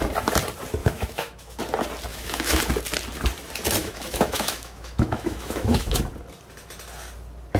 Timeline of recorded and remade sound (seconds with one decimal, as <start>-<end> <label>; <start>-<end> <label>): 0.0-0.8 recorded; 0.8-1.6 remade; 1.6-2.1 recorded; 2.1-2.6 remade; 2.6-3.8 recorded; 3.8-6.0 remade; 6.0-7.6 recorded